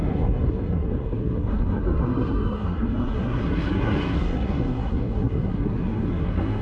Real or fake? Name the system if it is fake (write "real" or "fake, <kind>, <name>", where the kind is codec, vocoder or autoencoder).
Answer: fake, codec, SNAC